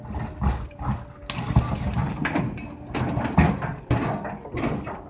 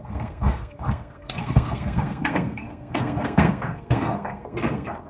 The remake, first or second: second